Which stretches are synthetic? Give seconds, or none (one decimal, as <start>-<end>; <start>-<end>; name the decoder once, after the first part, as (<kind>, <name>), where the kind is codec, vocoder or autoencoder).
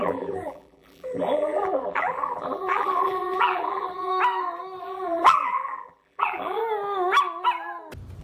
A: 0.0-4.1 (vocoder, BigVGAN v2); 4.8-6.6